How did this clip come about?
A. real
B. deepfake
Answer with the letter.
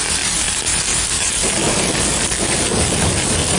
A